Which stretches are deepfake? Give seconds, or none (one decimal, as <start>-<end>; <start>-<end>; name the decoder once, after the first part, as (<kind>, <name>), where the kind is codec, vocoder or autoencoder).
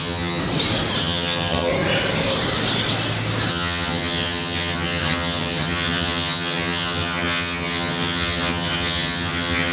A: 0.0-0.4 (vocoder, HiFi-GAN); 1.0-1.7; 3.5-9.7